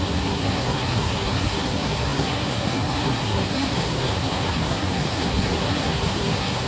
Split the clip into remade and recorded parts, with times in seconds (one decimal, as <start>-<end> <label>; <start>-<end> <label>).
0.0-6.7 remade

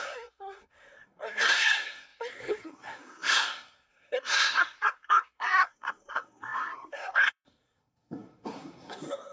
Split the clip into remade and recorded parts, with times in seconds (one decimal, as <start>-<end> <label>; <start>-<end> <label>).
0.0-9.3 remade

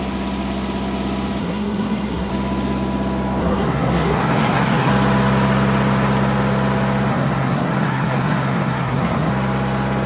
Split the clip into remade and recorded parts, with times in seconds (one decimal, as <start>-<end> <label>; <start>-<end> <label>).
0.0-1.4 recorded; 1.4-2.3 remade; 2.3-3.4 recorded; 3.4-4.9 remade; 4.9-7.1 recorded; 7.1-9.3 remade; 9.3-10.1 recorded

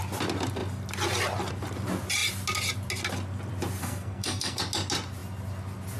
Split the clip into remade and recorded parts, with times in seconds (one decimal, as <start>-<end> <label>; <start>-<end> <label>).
0.0-3.8 recorded; 3.8-4.6 remade; 4.6-6.0 recorded

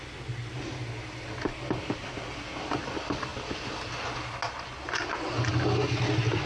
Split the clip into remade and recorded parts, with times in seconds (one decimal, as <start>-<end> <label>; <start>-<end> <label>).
0.0-6.5 recorded

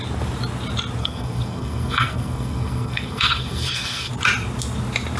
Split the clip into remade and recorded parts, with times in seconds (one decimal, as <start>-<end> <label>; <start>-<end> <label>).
0.0-1.0 recorded; 1.0-4.1 remade; 4.1-5.2 recorded

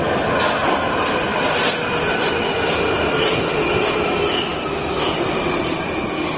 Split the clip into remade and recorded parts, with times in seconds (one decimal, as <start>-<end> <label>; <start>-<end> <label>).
0.0-6.4 recorded

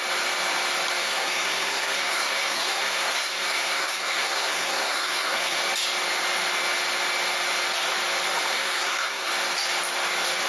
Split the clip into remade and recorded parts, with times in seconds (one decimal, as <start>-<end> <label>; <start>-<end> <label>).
0.0-1.0 recorded; 1.0-5.6 remade; 5.6-8.5 recorded; 8.5-9.3 remade; 9.3-10.5 recorded